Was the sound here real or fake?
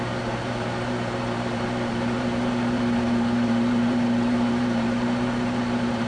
fake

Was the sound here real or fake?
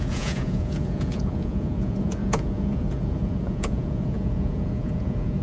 fake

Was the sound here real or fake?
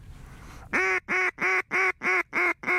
real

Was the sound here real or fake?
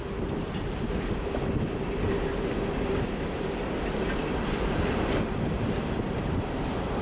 real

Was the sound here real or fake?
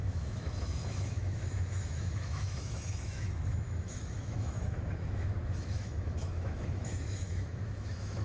fake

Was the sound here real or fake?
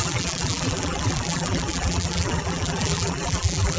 fake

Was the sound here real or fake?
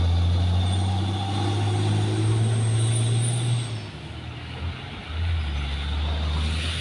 real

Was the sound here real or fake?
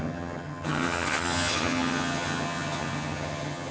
fake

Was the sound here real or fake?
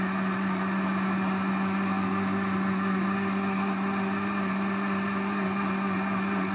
real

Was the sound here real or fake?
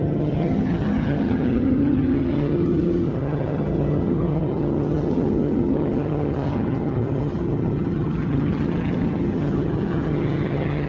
fake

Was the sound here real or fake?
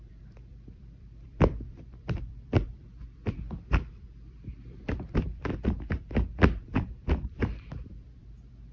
fake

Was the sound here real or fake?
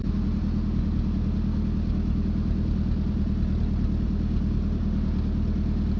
real